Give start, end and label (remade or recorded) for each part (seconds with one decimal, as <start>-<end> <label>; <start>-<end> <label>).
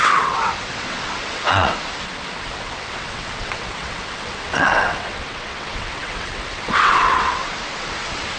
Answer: 0.0-8.4 remade